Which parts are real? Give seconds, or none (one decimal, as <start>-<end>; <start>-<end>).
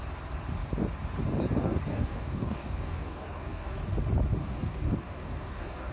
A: 0.0-1.9; 3.7-4.4